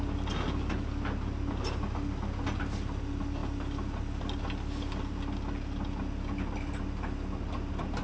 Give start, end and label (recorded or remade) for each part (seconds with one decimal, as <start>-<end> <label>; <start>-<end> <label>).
0.0-8.0 recorded